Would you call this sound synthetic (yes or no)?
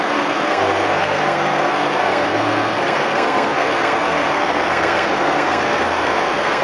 yes